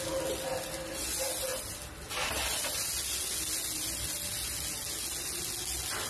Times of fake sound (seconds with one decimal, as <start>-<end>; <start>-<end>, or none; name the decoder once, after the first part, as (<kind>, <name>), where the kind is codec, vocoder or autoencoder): none